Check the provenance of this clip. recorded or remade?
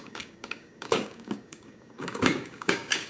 remade